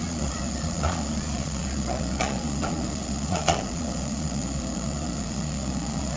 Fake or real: fake